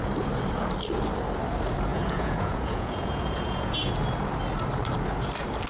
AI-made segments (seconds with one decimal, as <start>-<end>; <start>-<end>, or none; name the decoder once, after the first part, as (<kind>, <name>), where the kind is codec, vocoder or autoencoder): 1.9-3.9 (vocoder, Vocos)